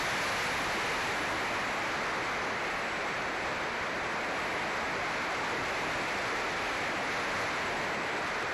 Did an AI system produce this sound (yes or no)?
no